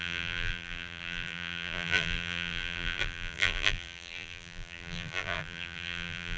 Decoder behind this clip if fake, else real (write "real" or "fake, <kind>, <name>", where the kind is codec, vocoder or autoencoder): fake, vocoder, BigVGAN v2